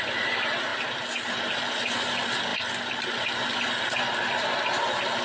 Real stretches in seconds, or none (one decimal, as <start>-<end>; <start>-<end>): 0.0-5.2